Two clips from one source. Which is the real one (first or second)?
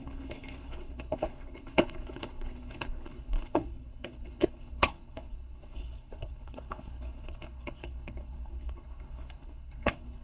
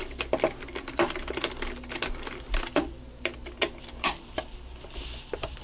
second